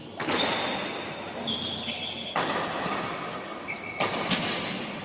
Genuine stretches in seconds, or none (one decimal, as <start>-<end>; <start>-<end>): 0.0-5.0

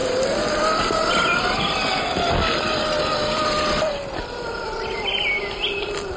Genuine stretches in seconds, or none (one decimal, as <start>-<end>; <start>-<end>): 0.0-6.2

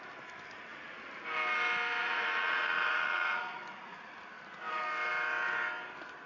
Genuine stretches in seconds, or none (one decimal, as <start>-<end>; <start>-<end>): 0.0-2.0; 4.0-6.3